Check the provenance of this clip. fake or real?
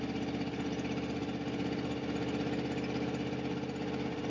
real